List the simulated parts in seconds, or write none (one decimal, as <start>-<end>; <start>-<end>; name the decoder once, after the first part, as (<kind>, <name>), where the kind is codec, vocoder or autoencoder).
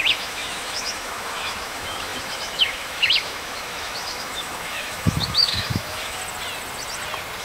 0.0-6.2 (autoencoder, DAC-VAE)